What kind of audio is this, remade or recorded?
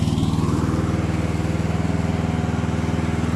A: recorded